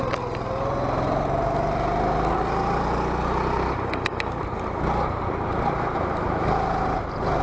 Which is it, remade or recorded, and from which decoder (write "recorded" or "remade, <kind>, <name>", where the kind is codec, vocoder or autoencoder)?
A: recorded